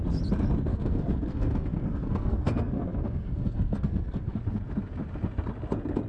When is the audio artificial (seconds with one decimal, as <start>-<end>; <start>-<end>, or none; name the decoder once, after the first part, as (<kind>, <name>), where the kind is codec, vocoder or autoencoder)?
0.7-4.4 (codec, SNAC)